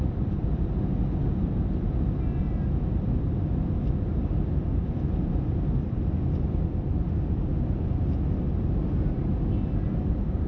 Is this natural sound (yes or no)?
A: yes